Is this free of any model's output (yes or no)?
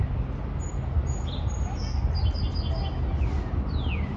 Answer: yes